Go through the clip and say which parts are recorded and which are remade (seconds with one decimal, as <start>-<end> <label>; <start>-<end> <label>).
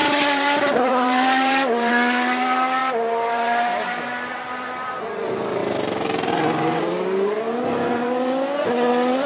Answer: 0.0-1.9 remade; 1.9-2.8 recorded; 2.8-4.0 remade; 4.0-5.6 recorded; 5.6-7.4 remade; 7.4-9.3 recorded